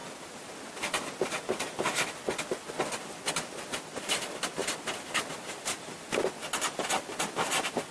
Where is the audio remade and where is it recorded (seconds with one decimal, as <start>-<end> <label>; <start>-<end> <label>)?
0.0-7.9 recorded